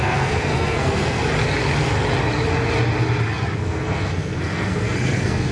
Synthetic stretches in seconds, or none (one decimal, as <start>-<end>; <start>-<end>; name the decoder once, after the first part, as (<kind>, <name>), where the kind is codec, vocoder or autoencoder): 0.0-1.2 (codec, SNAC); 3.6-5.5